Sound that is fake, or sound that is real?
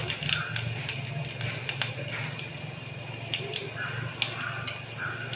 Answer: real